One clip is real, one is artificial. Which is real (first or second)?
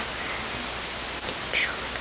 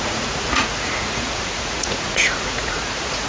first